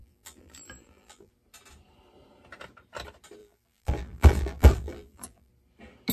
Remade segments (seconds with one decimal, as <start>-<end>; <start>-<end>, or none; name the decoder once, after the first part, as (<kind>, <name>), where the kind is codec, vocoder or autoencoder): 0.0-1.3 (vocoder, BigVGAN v2); 3.4-5.5